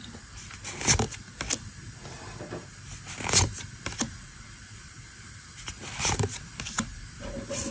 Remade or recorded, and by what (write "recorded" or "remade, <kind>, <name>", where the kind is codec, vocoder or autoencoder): recorded